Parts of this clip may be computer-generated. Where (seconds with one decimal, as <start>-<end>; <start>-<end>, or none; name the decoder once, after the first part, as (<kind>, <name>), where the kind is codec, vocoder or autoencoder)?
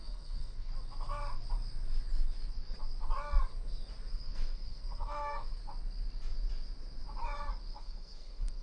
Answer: 0.0-0.7 (codec, SNAC); 4.1-5.6; 7.8-8.6